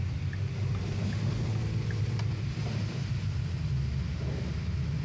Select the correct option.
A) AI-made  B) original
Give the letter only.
B